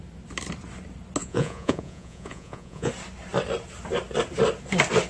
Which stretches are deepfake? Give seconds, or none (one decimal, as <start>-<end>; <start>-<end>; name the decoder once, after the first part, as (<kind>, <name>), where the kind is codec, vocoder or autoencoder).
1.2-2.9 (vocoder, Vocos)